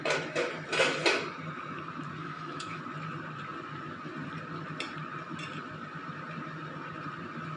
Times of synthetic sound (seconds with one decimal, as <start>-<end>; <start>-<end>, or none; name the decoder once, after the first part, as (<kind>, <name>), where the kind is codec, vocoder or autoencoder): 2.2-2.8 (autoencoder, DAC-VAE)